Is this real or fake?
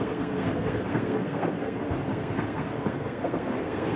fake